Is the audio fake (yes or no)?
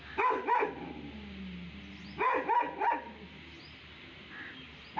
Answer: no